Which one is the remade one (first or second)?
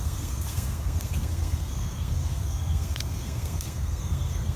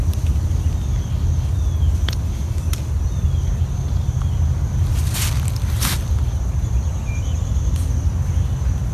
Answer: first